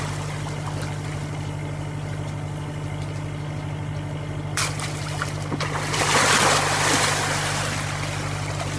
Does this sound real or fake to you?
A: real